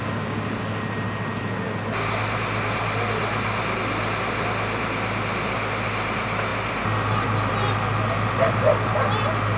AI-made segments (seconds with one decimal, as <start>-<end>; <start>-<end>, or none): none